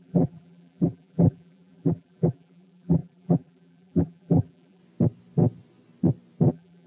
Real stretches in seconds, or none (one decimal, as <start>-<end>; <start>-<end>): 4.8-6.5